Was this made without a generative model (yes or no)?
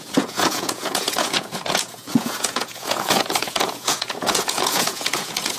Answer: no